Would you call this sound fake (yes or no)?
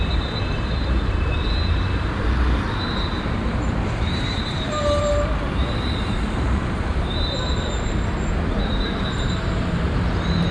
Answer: yes